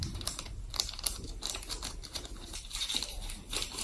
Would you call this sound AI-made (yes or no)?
yes